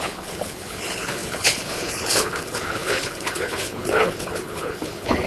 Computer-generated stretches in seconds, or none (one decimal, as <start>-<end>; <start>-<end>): 0.0-5.3